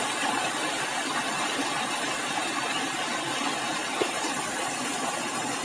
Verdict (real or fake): real